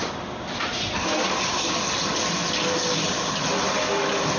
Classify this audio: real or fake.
real